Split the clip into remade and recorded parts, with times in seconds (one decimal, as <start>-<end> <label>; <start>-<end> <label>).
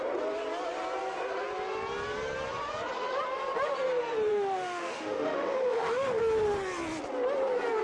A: 0.0-4.3 recorded; 4.3-6.2 remade; 6.2-7.8 recorded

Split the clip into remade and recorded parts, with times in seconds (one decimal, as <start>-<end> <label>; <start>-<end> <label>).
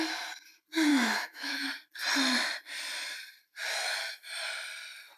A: 0.0-0.9 recorded; 0.9-1.7 remade; 1.7-5.2 recorded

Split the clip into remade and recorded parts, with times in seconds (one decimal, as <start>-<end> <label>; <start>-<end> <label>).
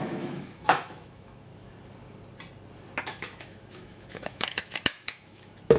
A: 0.0-1.5 remade; 1.5-3.0 recorded; 3.0-5.8 remade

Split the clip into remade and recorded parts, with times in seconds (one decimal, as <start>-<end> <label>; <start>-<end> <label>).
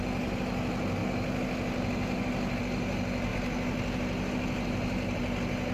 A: 0.0-5.7 recorded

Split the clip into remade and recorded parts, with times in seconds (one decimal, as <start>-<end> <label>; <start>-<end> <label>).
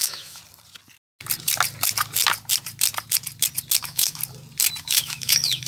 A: 0.0-0.4 remade; 0.4-3.8 recorded; 3.8-4.2 remade; 4.2-4.8 recorded; 4.8-5.7 remade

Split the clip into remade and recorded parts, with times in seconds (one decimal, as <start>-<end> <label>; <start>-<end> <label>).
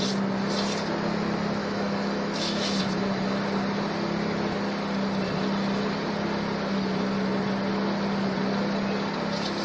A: 0.0-1.6 recorded; 1.6-2.8 remade; 2.8-9.6 recorded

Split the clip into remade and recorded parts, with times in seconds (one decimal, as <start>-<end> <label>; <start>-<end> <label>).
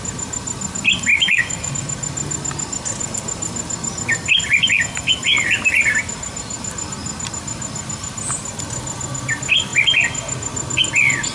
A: 0.0-1.1 recorded; 1.1-1.7 remade; 1.7-11.3 recorded